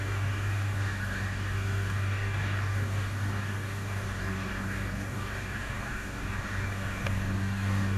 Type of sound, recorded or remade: remade